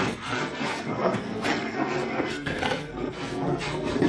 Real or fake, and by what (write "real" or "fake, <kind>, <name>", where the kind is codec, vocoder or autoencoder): fake, codec, SNAC